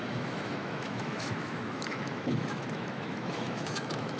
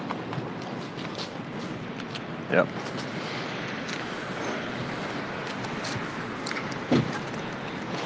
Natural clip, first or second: second